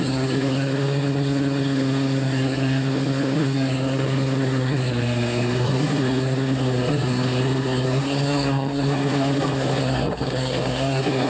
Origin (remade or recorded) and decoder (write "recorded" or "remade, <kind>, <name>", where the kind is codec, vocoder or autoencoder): remade, codec, SNAC